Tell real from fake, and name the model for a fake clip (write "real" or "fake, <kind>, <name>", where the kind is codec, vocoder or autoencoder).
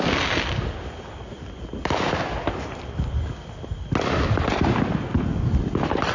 real